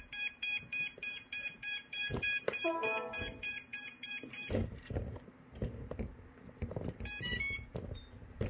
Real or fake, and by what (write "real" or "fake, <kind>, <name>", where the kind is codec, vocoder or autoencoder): fake, vocoder, BigVGAN v2